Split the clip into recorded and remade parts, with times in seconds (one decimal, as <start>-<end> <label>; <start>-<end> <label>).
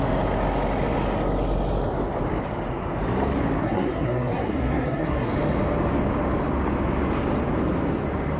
0.0-3.6 recorded; 3.6-5.3 remade; 5.3-8.4 recorded